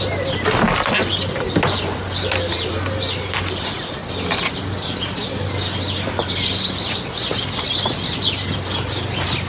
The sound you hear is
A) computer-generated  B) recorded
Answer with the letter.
B